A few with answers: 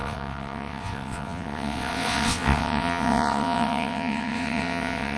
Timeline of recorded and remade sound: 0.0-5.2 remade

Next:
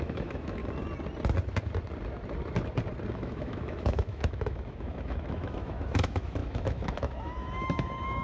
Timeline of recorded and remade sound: 0.0-0.6 remade; 0.6-3.1 recorded; 3.1-8.2 remade